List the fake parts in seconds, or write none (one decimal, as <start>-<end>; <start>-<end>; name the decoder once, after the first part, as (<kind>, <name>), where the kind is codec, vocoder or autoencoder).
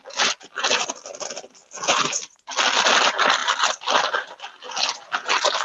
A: 3.4-4.0 (vocoder, BigVGAN v2)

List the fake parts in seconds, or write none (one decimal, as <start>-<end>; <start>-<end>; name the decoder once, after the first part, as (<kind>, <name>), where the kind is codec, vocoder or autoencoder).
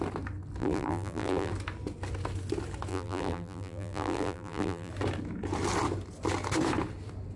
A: 0.6-1.5 (vocoder, BigVGAN v2); 2.9-4.9